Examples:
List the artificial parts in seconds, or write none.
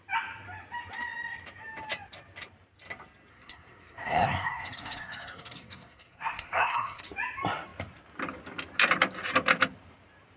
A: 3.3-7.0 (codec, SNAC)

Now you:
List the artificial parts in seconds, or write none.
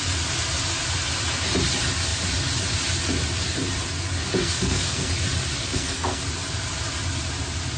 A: 4.4-5.1 (codec, SNAC); 5.6-6.2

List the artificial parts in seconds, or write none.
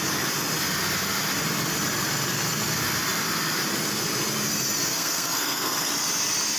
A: 4.9-5.9 (codec, SNAC)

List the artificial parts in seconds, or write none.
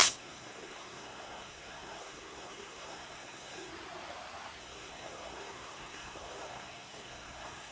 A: 0.0-3.7 (codec, SNAC); 4.6-7.7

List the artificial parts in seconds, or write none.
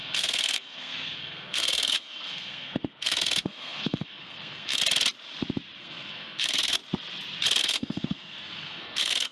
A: 0.0-4.8 (codec, SNAC); 5.8-6.8; 7.6-9.3